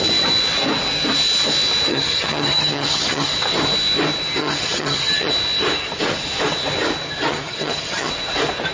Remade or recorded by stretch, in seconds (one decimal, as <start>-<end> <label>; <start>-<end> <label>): 0.0-1.9 recorded; 1.9-3.3 remade; 3.3-4.4 recorded; 4.4-5.3 remade; 5.3-7.3 recorded; 7.3-8.1 remade; 8.1-8.7 recorded